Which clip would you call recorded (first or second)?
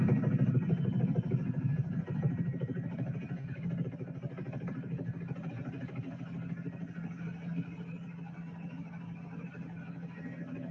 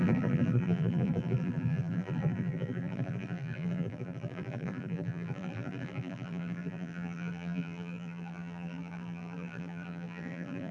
first